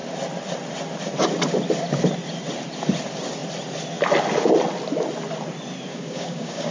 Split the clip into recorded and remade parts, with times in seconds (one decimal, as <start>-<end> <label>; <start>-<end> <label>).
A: 0.0-5.9 recorded; 5.9-6.7 remade